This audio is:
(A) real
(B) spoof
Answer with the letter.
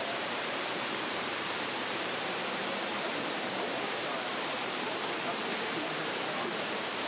B